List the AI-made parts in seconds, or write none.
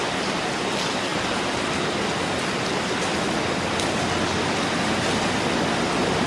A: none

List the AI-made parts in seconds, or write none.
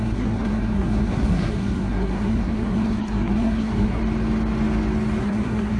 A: 0.0-4.0; 5.2-5.8